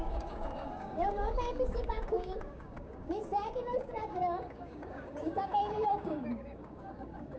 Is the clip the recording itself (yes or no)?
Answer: no